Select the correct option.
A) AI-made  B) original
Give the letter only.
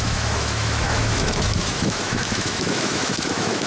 A